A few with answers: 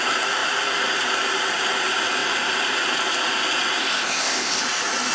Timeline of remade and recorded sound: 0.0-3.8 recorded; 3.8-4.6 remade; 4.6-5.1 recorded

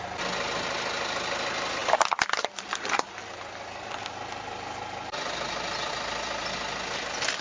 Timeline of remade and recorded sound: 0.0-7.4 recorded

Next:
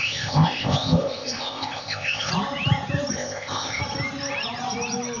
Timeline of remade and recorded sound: 0.0-2.3 remade; 2.3-3.1 recorded; 3.1-3.8 remade; 3.8-5.2 recorded